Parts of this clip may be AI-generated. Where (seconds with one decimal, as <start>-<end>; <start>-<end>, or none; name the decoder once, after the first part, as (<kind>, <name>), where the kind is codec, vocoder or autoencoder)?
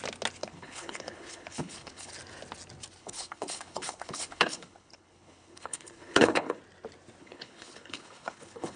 0.4-2.1 (codec, HILCodec); 3.0-6.6; 7.2-8.8